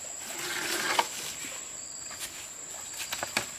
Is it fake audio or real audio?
real